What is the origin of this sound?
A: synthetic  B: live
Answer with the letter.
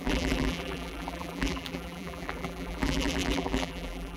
A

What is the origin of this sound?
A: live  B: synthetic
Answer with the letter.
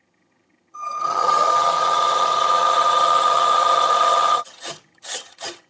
B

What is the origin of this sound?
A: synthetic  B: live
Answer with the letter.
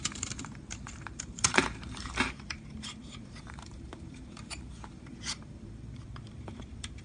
A